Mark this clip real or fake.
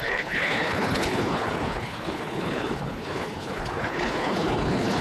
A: fake